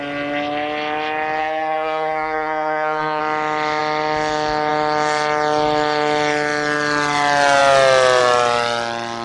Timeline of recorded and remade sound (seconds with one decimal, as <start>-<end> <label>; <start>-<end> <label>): 0.0-1.4 recorded; 1.4-3.2 remade; 3.2-9.2 recorded

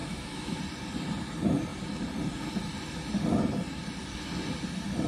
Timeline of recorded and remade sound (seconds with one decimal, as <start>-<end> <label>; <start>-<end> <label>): 0.0-0.6 remade; 0.6-5.1 recorded

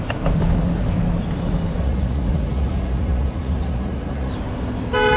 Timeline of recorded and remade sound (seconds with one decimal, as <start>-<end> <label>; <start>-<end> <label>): 0.0-1.8 recorded; 1.8-4.3 remade; 4.3-5.2 recorded

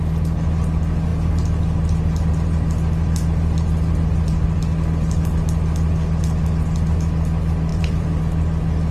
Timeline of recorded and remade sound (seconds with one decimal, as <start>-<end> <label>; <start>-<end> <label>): 0.0-7.7 recorded; 7.7-8.2 remade; 8.2-8.9 recorded

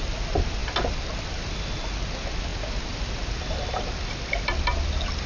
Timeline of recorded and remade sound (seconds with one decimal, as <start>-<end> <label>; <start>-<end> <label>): 0.0-5.3 recorded

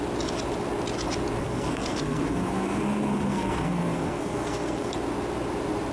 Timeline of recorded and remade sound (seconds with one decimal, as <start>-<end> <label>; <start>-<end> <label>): 0.0-1.4 recorded; 1.4-4.9 remade; 4.9-5.9 recorded

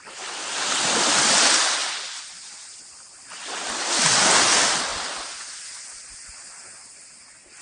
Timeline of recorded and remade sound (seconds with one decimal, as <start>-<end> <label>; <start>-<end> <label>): 0.0-7.6 recorded

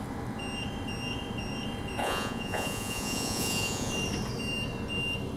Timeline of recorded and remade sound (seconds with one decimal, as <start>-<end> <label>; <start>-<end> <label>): 0.0-2.0 recorded; 2.0-3.9 remade; 3.9-5.4 recorded